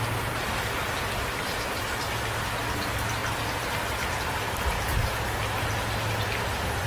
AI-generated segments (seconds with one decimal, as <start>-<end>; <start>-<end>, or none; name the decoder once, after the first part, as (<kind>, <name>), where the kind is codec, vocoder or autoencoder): none

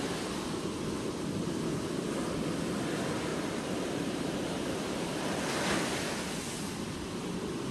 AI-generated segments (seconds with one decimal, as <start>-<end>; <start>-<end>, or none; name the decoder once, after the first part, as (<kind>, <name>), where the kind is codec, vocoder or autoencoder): 3.3-5.2 (vocoder, BigVGAN v2)

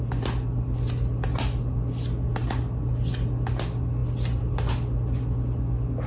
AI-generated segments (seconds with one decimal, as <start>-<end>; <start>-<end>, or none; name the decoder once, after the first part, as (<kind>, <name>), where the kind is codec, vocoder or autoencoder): none

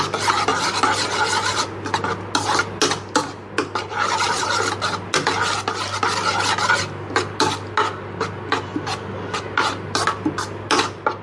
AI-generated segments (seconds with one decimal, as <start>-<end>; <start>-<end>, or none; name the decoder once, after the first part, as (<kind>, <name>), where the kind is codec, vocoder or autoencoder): none